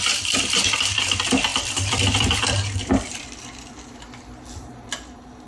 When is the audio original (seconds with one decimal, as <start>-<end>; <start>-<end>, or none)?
none